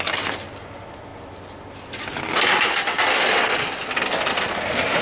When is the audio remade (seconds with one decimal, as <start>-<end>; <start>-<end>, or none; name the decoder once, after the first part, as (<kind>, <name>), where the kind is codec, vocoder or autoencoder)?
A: none

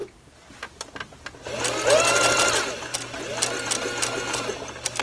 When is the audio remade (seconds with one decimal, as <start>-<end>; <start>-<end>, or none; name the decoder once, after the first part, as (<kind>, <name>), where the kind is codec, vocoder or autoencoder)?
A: 0.0-0.5 (vocoder, BigVGAN v2)

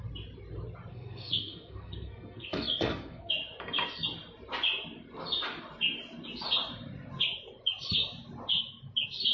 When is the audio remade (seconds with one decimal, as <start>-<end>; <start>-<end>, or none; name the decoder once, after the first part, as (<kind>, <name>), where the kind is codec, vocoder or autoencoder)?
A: 0.9-3.3 (codec, SNAC)

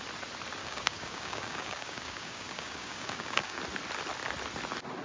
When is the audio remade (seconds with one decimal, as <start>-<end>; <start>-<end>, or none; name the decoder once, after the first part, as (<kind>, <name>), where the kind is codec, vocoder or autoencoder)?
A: 0.6-3.6 (codec, DAC)

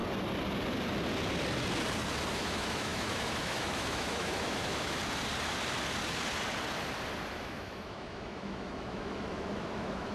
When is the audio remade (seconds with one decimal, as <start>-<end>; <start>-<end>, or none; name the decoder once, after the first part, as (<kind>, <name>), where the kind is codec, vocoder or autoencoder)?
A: 2.3-5.0 (autoencoder, DAC-VAE); 7.4-10.1

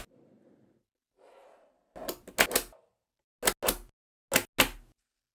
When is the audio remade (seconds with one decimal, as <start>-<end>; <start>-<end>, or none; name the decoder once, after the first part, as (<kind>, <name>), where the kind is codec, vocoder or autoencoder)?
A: none